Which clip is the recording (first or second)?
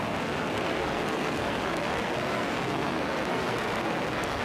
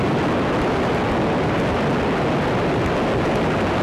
second